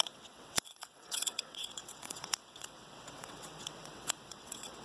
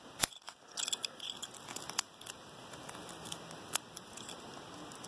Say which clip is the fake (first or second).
first